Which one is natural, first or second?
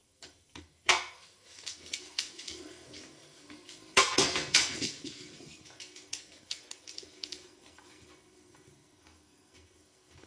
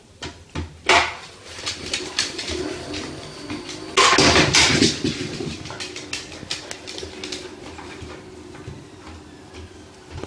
second